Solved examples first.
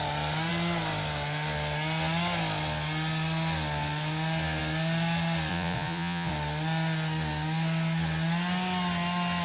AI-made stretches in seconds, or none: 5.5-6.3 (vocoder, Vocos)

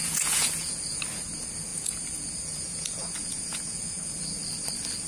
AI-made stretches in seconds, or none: 0.0-1.0 (vocoder, Vocos); 1.7-4.0

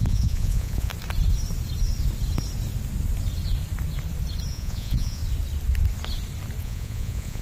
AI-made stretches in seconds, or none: 0.0-0.9 (vocoder, Vocos); 4.5-5.2; 6.6-7.4

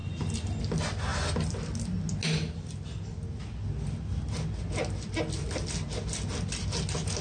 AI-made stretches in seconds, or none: none

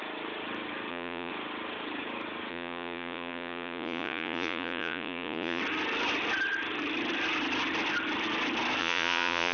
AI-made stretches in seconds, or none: 0.9-1.3 (vocoder, Vocos); 2.5-5.6; 8.8-9.5

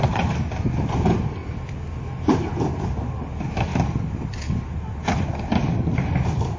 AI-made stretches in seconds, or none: none